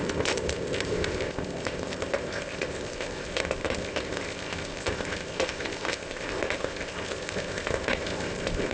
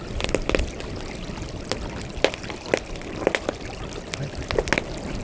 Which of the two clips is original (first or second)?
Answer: second